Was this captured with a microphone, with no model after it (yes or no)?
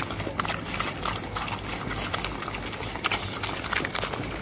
yes